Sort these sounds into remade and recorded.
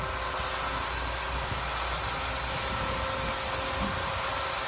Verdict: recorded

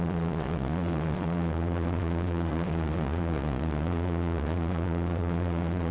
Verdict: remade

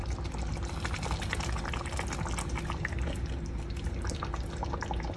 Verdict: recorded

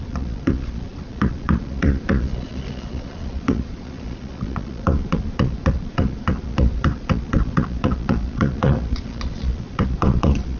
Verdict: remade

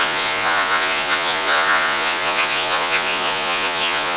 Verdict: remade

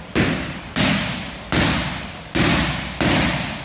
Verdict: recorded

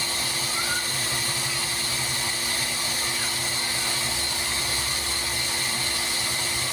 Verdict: recorded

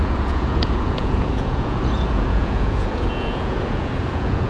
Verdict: remade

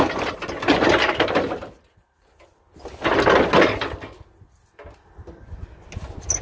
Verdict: recorded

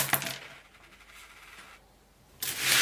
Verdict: recorded